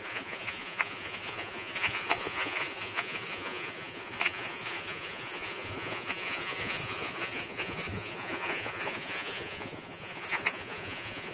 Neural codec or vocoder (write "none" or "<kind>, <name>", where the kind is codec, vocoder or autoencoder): vocoder, Vocos